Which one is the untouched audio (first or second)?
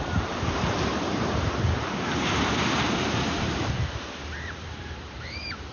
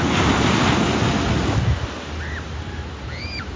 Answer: second